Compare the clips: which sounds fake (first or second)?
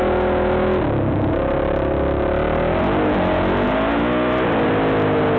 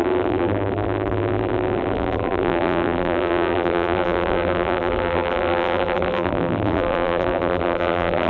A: second